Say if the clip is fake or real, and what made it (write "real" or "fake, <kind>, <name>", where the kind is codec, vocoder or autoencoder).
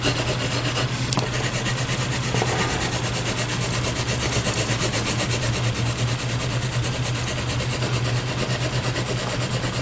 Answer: real